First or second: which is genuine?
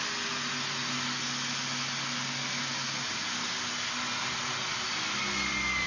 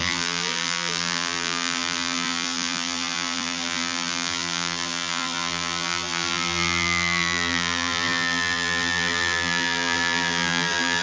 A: first